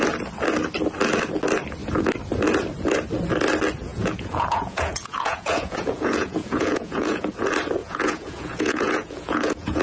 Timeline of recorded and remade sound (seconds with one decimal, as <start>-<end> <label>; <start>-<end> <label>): 0.0-3.9 recorded; 3.9-7.3 remade; 7.3-7.8 recorded; 7.8-9.8 remade